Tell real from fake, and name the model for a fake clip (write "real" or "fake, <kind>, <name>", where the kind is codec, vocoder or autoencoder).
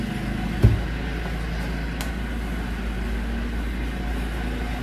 real